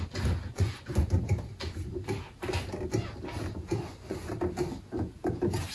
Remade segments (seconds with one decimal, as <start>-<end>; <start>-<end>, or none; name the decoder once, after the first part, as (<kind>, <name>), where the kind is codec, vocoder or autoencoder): 0.5-1.1 (vocoder, Vocos); 3.8-4.3